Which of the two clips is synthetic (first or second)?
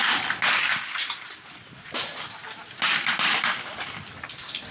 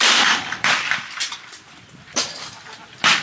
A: second